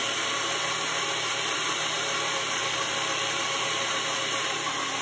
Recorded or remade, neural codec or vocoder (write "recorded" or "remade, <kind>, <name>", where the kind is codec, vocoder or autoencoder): recorded